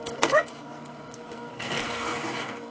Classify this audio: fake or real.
fake